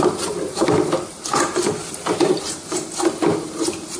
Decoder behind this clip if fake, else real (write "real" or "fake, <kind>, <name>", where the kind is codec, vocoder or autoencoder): fake, vocoder, BigVGAN v2